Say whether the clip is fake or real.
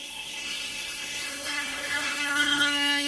fake